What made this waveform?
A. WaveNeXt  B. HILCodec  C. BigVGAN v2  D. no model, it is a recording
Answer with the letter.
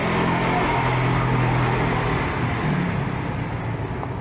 D